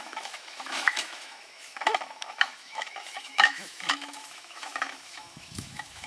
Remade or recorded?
remade